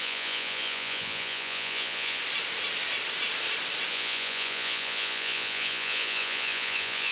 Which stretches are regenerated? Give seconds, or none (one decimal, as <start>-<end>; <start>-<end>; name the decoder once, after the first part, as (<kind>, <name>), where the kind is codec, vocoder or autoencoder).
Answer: 0.0-2.2 (vocoder, Vocos); 3.9-7.1

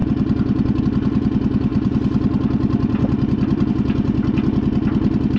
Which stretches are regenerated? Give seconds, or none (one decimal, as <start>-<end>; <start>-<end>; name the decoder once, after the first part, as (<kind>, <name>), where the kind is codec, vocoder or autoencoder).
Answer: 0.0-0.8 (vocoder, BigVGAN v2); 1.7-3.7

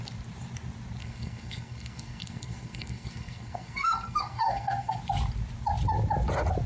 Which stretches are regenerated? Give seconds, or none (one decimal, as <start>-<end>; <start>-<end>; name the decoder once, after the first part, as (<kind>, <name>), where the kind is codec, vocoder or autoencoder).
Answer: 1.0-5.0 (codec, SNAC)

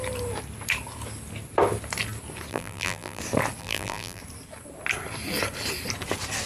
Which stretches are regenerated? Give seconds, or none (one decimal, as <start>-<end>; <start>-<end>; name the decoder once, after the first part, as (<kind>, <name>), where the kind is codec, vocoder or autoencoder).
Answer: 2.5-3.2 (vocoder, BigVGAN v2); 3.6-4.2

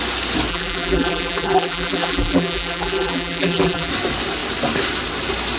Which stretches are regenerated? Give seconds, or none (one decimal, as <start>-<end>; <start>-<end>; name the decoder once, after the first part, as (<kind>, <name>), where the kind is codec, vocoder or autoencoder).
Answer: 0.5-3.9 (vocoder, BigVGAN v2)